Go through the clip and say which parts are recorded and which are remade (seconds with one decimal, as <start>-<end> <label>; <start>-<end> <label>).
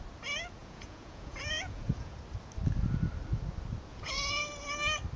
0.0-0.6 recorded; 0.6-2.2 remade; 2.2-3.9 recorded; 3.9-4.4 remade; 4.4-5.2 recorded